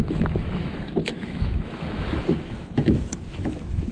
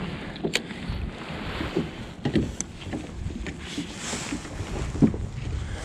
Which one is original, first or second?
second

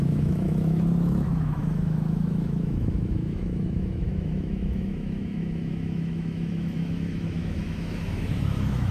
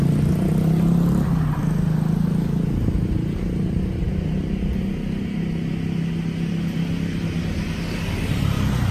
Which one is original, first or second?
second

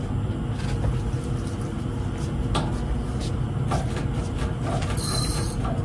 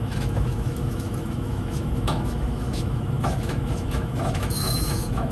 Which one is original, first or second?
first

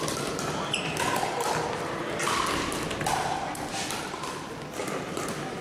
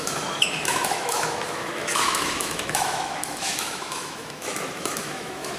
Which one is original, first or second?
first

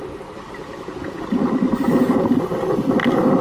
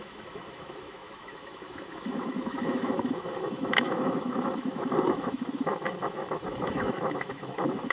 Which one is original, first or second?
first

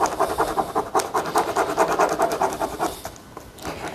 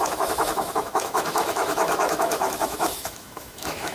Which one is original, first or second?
first